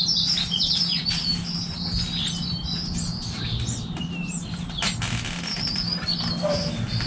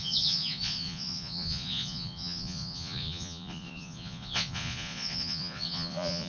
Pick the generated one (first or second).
second